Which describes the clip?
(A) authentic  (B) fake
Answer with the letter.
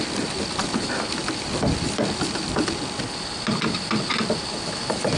A